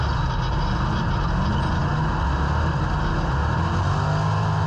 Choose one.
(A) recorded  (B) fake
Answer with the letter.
A